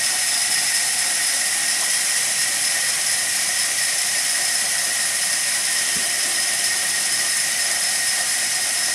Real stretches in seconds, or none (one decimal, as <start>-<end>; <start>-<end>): none